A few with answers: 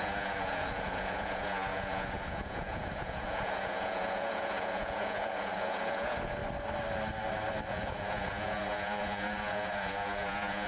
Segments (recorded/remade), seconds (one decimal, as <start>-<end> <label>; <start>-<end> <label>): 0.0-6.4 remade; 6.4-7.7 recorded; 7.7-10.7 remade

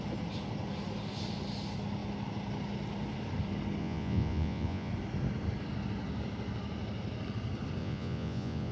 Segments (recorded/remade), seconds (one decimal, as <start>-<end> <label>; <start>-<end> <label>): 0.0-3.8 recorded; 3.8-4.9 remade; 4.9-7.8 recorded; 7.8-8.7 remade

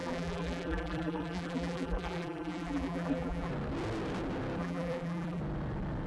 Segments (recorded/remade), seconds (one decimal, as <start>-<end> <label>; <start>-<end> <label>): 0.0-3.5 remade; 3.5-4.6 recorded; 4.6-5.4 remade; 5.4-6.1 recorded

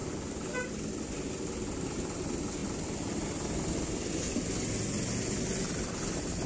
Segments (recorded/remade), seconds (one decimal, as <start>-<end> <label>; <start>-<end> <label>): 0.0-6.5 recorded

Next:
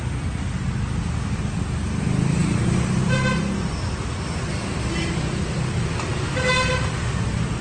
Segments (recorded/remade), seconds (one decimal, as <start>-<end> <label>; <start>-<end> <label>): 0.0-7.6 recorded

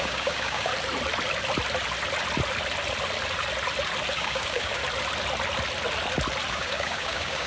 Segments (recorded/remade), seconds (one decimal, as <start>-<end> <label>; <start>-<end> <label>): 0.0-0.7 remade; 0.7-4.1 recorded; 4.1-4.8 remade; 4.8-6.5 recorded; 6.5-7.5 remade

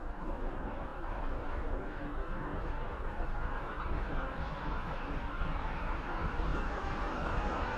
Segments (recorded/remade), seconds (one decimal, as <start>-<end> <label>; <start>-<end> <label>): 0.0-7.8 remade